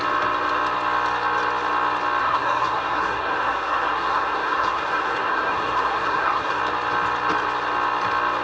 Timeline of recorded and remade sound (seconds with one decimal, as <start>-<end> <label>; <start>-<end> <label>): 0.0-2.2 recorded; 2.2-6.6 remade; 6.6-8.4 recorded